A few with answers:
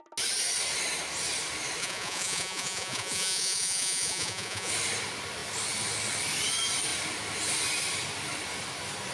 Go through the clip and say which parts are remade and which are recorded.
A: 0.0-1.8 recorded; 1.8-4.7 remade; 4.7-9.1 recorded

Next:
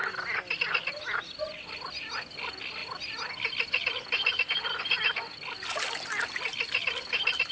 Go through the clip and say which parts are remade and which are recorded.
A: 0.0-7.5 recorded

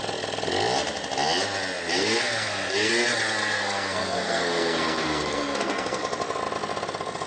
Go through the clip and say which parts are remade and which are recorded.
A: 0.0-1.9 recorded; 1.9-2.9 remade; 2.9-3.4 recorded; 3.4-6.0 remade; 6.0-7.3 recorded